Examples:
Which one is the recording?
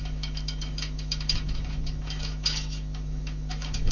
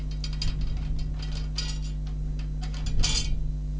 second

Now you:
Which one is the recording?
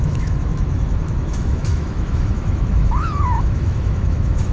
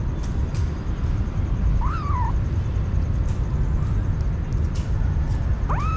second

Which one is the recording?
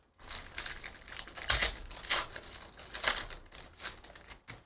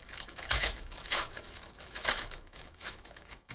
first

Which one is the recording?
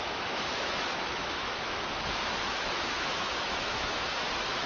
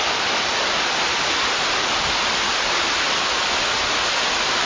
second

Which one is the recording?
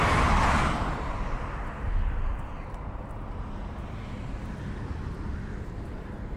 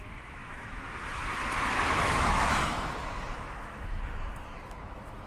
first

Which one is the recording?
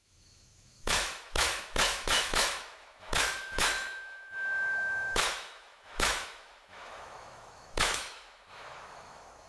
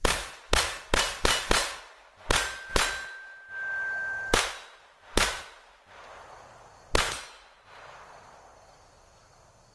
second